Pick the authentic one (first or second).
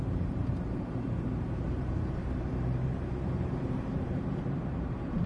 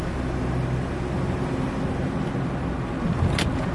second